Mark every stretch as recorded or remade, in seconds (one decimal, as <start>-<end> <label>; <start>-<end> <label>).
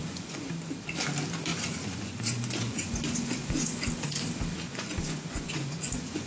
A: 0.0-0.5 remade; 0.5-1.5 recorded; 1.5-3.9 remade; 3.9-4.7 recorded; 4.7-6.3 remade